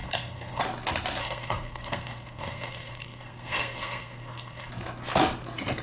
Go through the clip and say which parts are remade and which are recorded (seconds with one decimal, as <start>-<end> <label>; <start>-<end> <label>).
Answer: 0.0-0.6 remade; 0.6-1.2 recorded; 1.2-4.7 remade; 4.7-5.8 recorded